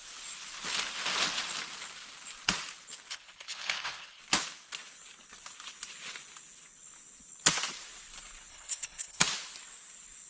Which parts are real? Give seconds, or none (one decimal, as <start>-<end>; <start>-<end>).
0.0-3.1; 4.2-8.5; 9.2-10.3